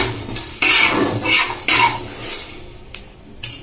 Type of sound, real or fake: real